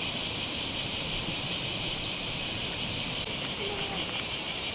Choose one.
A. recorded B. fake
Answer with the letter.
B